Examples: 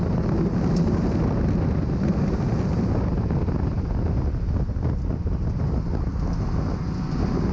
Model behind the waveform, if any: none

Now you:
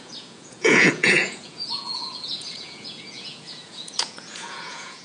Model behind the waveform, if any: vocoder, Vocos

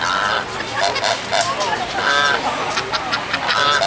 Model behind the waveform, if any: none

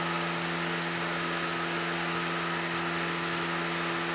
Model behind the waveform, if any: none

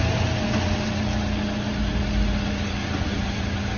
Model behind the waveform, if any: none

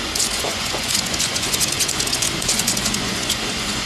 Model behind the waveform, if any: vocoder, Vocos